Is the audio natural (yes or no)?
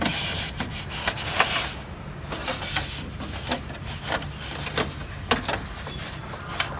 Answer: yes